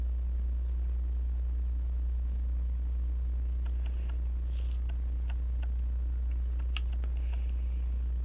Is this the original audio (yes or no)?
yes